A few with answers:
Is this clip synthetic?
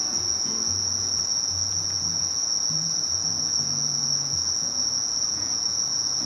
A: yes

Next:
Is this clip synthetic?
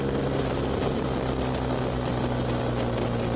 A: no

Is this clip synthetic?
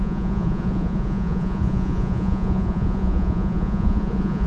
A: yes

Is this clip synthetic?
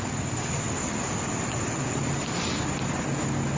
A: no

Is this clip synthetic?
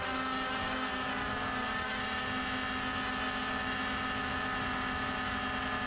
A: no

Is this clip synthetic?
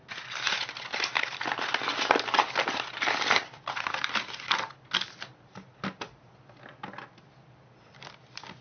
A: no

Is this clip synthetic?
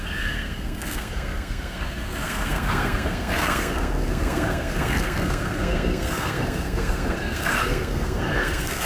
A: yes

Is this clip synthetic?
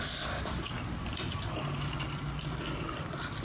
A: no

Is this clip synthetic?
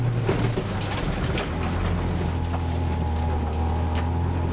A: no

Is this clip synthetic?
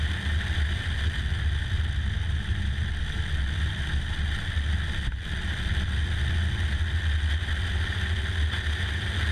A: no